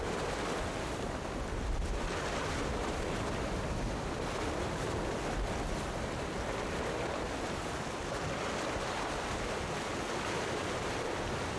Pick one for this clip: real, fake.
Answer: real